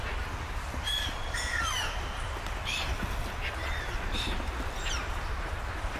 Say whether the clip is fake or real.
real